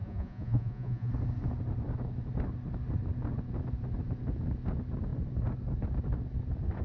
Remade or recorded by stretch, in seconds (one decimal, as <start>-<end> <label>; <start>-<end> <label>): 0.0-1.1 remade; 1.1-6.8 recorded